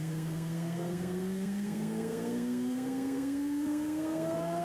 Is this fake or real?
fake